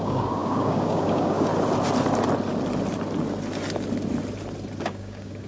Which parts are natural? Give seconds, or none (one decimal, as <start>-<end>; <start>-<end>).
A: 1.5-4.8

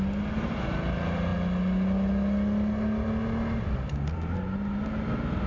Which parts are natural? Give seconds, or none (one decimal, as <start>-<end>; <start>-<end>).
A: 0.0-5.5

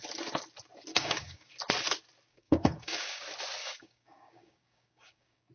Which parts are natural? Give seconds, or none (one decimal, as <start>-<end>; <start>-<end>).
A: 0.0-0.9; 1.5-2.3; 3.2-3.6

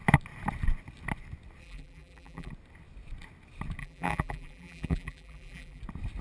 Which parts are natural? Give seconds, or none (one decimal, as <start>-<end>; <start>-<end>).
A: 0.0-1.6; 2.5-3.8; 5.8-6.2

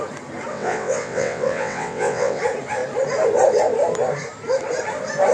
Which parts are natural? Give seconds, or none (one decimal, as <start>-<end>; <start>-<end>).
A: 0.0-0.5; 2.4-5.3

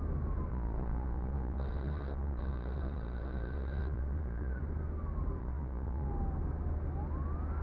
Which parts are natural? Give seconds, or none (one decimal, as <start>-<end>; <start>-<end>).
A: 0.0-0.5; 4.6-5.4; 6.1-7.6

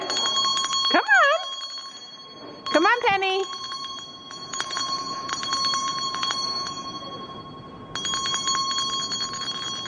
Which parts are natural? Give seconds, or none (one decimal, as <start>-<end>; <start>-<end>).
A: 0.0-3.4; 5.3-5.9; 7.4-9.9

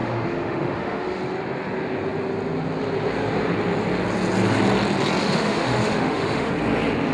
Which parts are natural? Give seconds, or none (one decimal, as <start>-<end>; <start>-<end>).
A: 1.2-5.2; 6.5-7.1